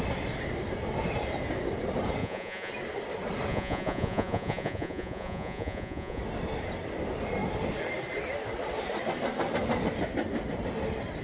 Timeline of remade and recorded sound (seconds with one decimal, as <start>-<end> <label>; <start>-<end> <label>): 0.0-2.2 recorded; 2.2-2.7 remade; 2.7-3.5 recorded; 3.5-6.2 remade; 6.2-11.2 recorded